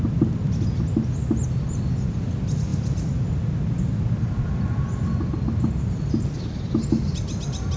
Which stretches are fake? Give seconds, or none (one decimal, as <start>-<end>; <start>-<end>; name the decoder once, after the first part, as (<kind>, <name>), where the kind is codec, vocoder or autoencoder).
none